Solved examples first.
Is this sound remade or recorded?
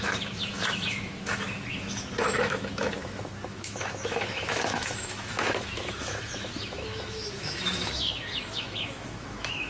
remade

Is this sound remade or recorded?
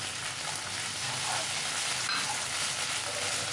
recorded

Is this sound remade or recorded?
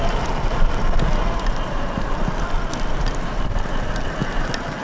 recorded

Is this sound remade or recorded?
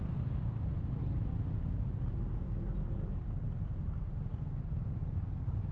recorded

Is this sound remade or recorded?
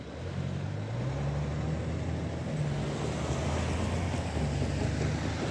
recorded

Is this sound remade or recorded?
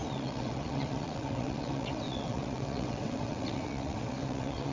remade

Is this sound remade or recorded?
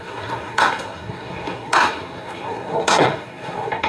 remade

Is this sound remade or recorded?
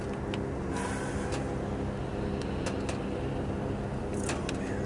recorded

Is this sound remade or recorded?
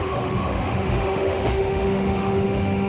remade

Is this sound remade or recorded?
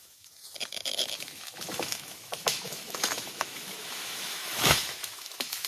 remade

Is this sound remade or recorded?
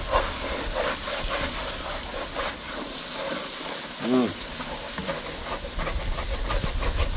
recorded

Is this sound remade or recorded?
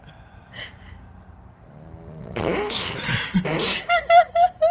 recorded